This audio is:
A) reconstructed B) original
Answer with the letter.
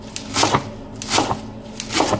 B